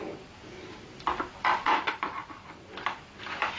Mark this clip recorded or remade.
recorded